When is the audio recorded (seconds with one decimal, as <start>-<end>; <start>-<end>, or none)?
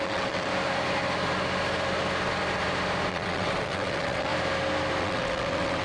0.5-3.1; 4.3-5.0